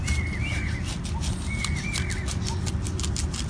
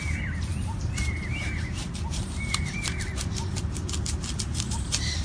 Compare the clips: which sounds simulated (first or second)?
second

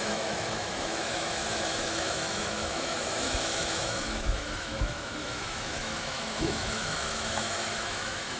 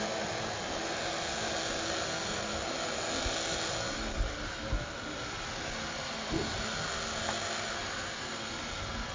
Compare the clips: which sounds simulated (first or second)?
first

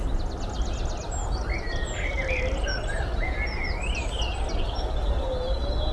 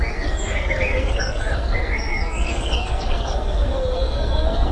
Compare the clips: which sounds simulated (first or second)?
second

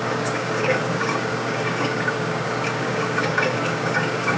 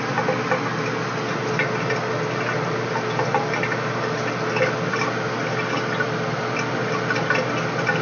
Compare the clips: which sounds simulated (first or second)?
first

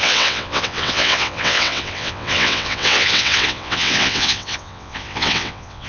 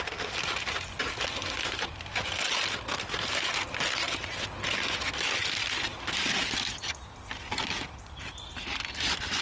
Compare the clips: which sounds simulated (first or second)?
first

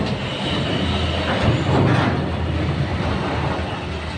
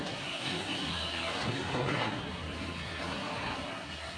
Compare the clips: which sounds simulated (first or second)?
second